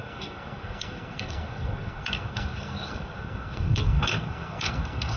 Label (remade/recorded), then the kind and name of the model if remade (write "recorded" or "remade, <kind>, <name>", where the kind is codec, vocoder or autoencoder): remade, codec, SNAC